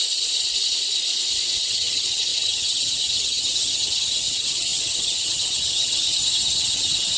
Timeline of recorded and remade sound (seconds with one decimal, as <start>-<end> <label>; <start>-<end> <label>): 0.0-1.7 recorded; 1.7-7.2 remade